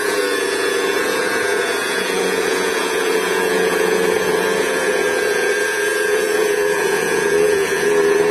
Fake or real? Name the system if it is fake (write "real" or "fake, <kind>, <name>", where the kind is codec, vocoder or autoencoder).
fake, vocoder, Vocos